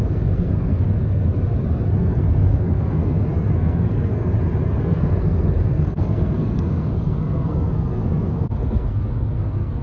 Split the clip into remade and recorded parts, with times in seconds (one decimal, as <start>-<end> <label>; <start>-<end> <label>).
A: 0.0-1.3 remade; 1.3-2.0 recorded; 2.0-4.3 remade; 4.3-4.8 recorded; 4.8-9.8 remade